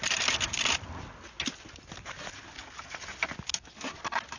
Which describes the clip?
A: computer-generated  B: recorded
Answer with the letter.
B